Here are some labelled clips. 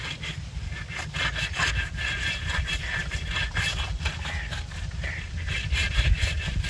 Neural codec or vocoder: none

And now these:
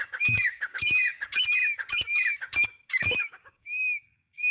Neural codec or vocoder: codec, DAC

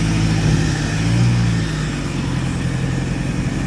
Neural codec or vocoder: none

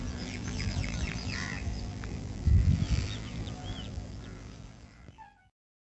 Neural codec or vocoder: vocoder, BigVGAN v2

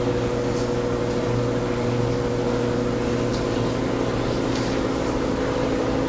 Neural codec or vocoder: none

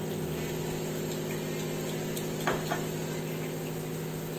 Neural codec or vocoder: none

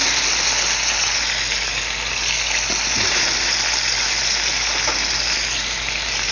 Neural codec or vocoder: none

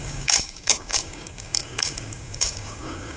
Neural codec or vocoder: codec, DAC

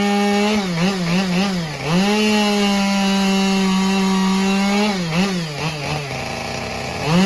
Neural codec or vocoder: none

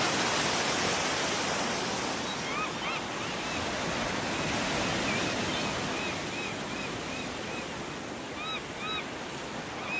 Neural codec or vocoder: none